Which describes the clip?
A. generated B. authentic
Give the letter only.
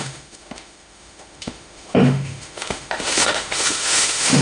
A